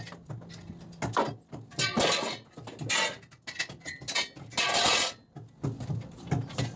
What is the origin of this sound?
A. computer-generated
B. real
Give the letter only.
B